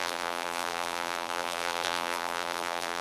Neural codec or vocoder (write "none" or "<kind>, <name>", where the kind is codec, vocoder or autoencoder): vocoder, BigVGAN v2